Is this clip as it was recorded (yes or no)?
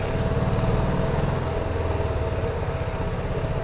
yes